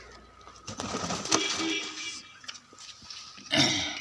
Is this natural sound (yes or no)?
yes